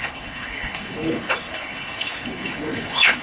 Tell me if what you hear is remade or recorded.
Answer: remade